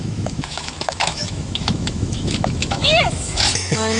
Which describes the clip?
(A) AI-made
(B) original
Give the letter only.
A